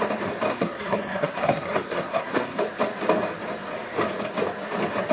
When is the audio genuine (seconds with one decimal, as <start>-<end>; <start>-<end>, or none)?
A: 0.0-0.5; 2.6-5.1